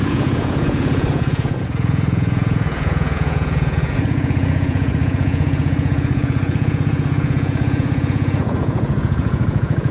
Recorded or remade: remade